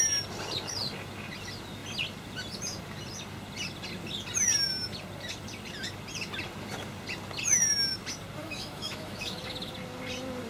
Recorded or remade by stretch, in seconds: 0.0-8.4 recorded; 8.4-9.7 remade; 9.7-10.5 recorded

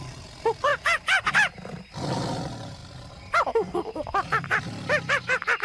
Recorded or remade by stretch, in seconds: 0.0-5.6 recorded

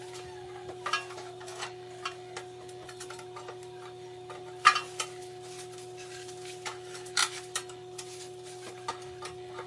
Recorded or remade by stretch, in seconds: 0.0-9.7 recorded

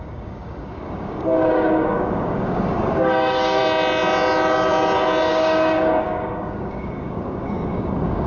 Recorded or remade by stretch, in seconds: 0.0-3.6 remade; 3.6-5.3 recorded; 5.3-8.3 remade

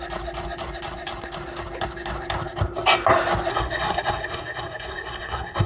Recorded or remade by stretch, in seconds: 0.0-3.5 recorded; 3.5-5.7 remade

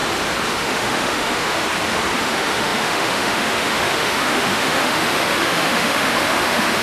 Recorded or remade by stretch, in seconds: 0.0-0.5 recorded; 0.5-1.6 remade; 1.6-2.2 recorded; 2.2-6.8 remade

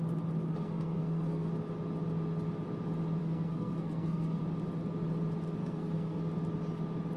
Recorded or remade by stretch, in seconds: 0.0-0.5 recorded; 0.5-1.5 remade; 1.5-3.2 recorded; 3.2-4.4 remade; 4.4-5.6 recorded; 5.6-6.2 remade; 6.2-7.2 recorded

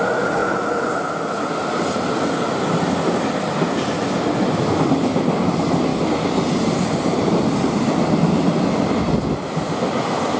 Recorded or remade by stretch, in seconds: 0.0-10.4 recorded